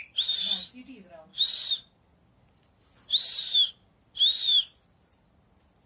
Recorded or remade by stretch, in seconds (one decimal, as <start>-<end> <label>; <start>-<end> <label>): 0.0-5.9 recorded

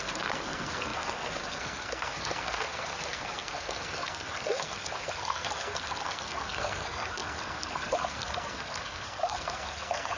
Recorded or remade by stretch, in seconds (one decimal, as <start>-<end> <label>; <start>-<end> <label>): 0.0-10.2 remade

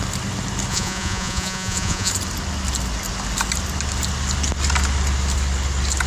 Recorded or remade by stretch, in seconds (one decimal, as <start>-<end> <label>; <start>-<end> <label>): 0.0-0.7 recorded; 0.7-2.1 remade; 2.1-6.1 recorded

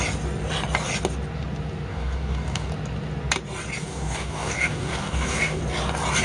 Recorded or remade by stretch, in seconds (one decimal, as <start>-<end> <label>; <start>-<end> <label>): 0.0-1.9 recorded; 1.9-2.7 remade; 2.7-3.8 recorded; 3.8-5.6 remade; 5.6-6.2 recorded

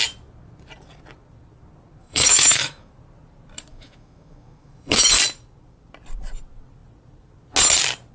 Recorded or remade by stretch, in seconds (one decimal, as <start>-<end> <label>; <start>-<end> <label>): 0.0-2.0 recorded; 2.0-2.9 remade; 2.9-3.7 recorded; 3.7-5.1 remade; 5.1-8.1 recorded